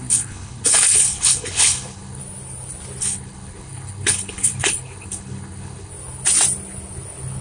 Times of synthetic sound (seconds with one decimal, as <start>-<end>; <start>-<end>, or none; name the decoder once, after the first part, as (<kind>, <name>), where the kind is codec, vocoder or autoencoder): 0.0-2.2 (codec, HILCodec); 3.0-5.9